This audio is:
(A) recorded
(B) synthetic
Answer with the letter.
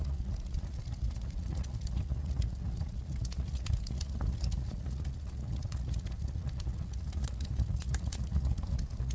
B